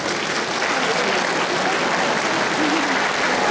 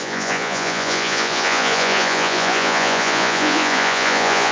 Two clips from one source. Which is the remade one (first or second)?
second